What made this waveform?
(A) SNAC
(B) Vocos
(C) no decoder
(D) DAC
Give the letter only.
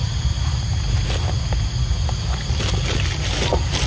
C